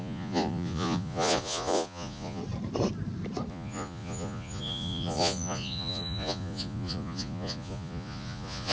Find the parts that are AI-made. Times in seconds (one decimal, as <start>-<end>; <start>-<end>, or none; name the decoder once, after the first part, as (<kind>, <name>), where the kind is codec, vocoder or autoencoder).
0.0-2.4 (vocoder, Vocos); 3.5-8.7